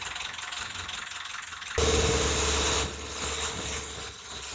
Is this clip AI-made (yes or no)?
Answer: no